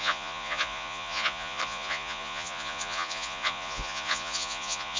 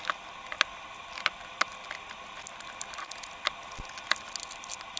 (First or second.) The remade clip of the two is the first